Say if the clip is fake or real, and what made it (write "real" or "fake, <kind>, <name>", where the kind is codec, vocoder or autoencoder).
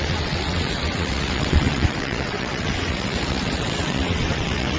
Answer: fake, vocoder, WaveNeXt